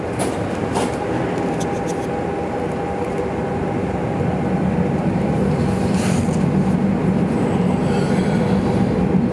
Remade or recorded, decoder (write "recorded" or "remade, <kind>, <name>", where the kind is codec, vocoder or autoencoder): remade, vocoder, BigVGAN v2